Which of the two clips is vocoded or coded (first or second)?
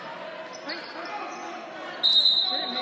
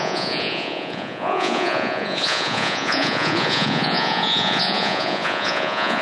second